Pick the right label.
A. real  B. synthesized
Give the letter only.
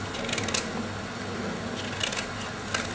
A